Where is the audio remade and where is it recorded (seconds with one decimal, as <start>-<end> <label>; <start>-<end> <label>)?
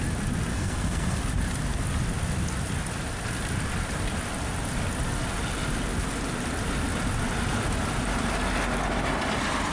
0.0-0.5 recorded; 0.5-1.2 remade; 1.2-9.7 recorded